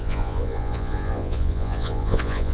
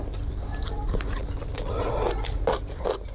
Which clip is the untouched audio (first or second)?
second